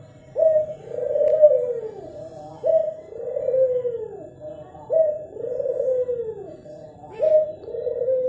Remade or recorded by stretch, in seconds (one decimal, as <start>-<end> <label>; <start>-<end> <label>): 0.0-2.8 remade; 2.8-3.4 recorded; 3.4-8.3 remade